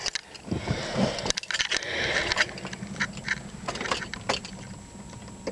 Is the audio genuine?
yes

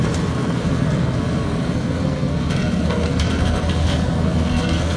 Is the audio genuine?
no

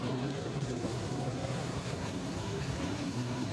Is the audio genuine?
no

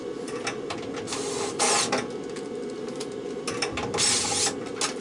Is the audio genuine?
yes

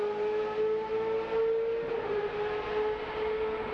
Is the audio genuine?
yes